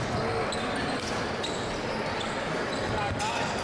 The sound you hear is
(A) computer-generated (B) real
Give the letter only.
B